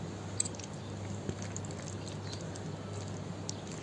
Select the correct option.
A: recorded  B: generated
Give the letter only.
A